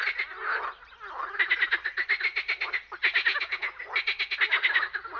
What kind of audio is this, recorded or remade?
recorded